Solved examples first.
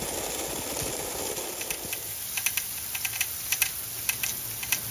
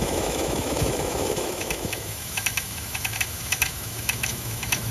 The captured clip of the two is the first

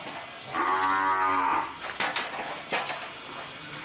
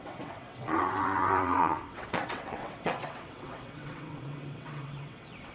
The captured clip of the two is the first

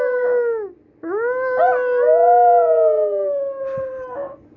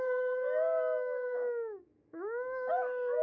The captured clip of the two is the first